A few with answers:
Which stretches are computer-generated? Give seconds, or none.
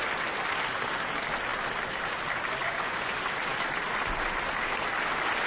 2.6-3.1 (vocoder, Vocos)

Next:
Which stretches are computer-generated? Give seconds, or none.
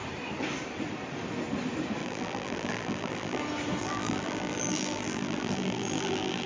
2.0-3.4 (vocoder, BigVGAN v2); 3.8-6.5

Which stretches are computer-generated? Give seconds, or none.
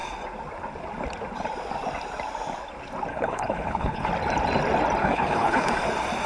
3.1-4.1 (codec, HILCodec); 5.0-5.7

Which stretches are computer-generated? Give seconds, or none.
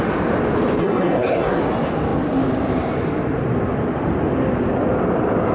0.8-1.6 (codec, SNAC)